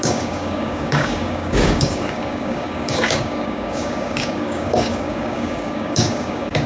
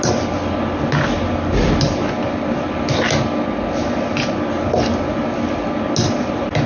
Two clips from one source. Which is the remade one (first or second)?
first